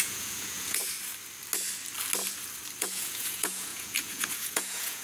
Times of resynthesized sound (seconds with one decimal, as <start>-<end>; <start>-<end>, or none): 0.0-0.8; 2.8-5.0